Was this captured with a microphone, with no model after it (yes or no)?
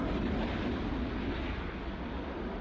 yes